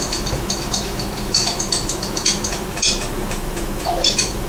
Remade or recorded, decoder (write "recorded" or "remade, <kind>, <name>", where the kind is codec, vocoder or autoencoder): remade, autoencoder, DAC-VAE